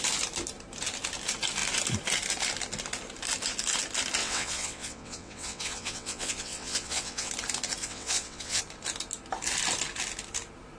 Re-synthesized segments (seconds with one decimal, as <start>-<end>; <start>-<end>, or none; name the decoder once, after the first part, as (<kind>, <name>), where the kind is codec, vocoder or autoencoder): 4.2-7.3 (vocoder, WaveNeXt); 7.8-8.6